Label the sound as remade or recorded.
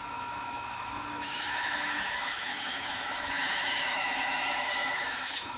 remade